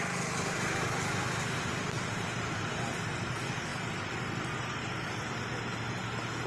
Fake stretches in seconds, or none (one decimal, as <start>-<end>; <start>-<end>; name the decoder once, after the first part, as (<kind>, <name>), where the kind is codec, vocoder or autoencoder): none